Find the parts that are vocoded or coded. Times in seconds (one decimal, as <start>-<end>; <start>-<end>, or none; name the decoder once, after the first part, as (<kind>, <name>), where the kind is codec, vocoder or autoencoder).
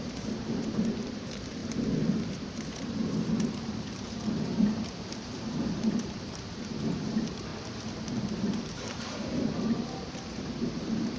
0.0-1.6 (vocoder, BigVGAN v2); 2.1-7.5; 8.7-11.2